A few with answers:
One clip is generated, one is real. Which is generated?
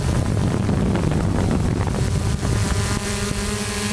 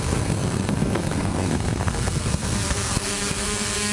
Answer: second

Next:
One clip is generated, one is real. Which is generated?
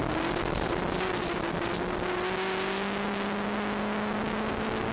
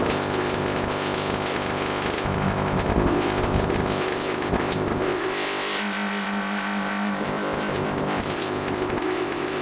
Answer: second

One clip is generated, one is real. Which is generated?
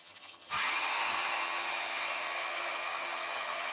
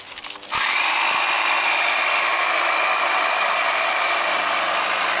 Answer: first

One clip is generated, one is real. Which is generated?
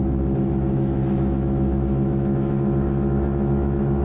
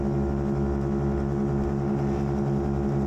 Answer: first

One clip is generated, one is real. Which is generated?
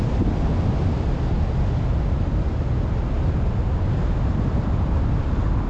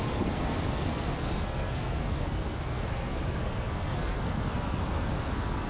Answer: second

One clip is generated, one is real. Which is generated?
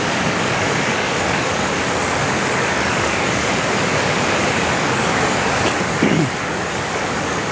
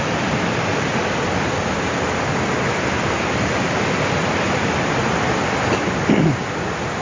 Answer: first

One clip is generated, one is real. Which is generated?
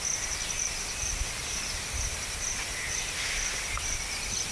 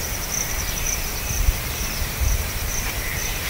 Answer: second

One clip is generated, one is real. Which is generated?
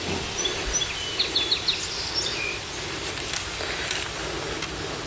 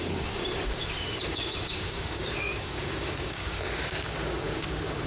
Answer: second